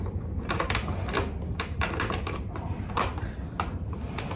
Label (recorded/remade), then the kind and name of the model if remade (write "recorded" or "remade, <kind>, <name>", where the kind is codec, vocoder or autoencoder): remade, vocoder, BigVGAN v2